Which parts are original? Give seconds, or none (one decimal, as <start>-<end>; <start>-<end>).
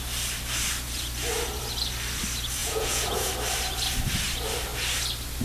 0.0-2.6; 3.3-5.4